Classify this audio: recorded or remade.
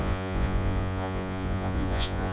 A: remade